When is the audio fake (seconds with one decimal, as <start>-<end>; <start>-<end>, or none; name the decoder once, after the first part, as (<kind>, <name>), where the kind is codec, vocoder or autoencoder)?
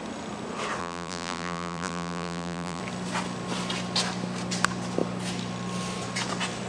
0.8-2.8 (vocoder, BigVGAN v2)